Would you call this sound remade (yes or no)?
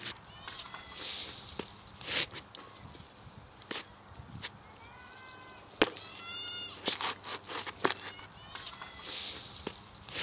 no